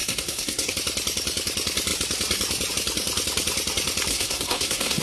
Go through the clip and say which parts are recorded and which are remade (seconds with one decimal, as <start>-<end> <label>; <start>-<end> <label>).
0.0-0.7 remade; 0.7-4.1 recorded; 4.1-5.0 remade